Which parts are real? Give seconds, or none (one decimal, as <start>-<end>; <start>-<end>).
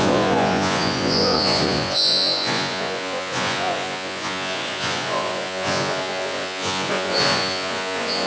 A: none